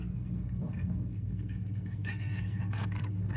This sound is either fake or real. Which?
fake